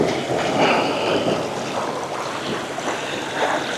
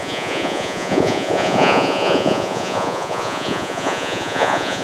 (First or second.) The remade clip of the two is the second